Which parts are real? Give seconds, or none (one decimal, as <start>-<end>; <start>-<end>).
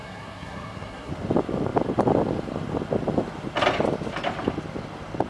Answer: 1.1-5.3